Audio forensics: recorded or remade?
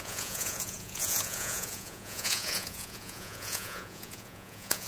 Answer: remade